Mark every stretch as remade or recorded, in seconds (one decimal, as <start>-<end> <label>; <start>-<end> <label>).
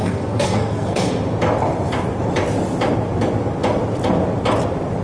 0.0-1.1 remade; 1.1-5.0 recorded